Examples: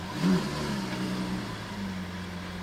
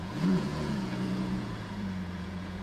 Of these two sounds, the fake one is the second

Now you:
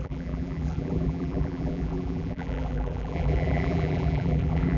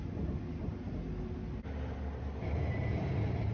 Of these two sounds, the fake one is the first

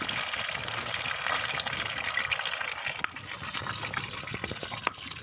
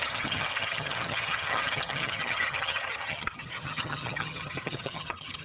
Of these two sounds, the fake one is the second